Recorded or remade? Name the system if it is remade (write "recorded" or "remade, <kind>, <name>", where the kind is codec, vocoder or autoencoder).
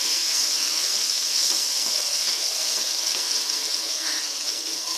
remade, codec, SNAC